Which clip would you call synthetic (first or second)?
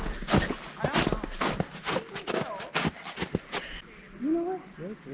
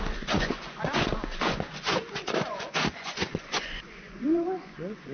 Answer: second